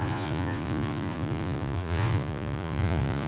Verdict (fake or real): fake